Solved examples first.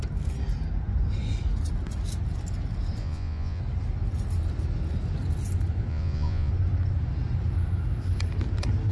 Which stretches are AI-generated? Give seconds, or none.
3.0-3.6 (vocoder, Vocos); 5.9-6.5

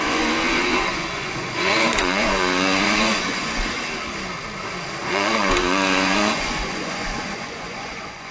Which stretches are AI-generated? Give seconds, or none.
0.0-3.6 (vocoder, Vocos); 5.0-8.3

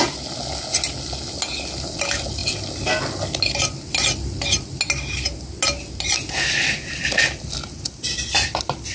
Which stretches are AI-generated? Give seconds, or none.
none

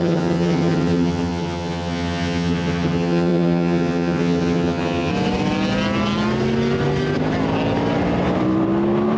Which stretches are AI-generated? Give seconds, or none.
0.0-5.1 (vocoder, HiFi-GAN)

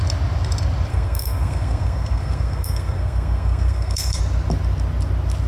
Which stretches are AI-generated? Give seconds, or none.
0.9-4.2 (codec, SNAC)

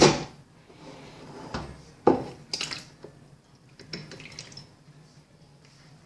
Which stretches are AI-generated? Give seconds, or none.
none

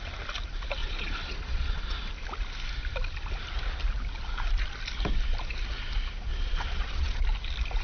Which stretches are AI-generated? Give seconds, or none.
0.8-2.1 (vocoder, Vocos); 6.3-7.2